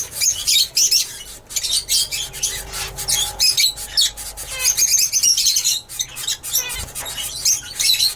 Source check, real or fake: real